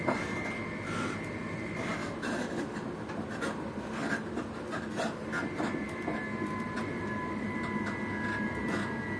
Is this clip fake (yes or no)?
no